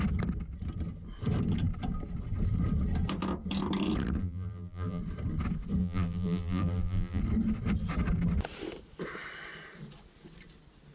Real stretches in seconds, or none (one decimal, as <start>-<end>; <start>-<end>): 0.0-4.2; 5.0-5.8; 7.2-10.9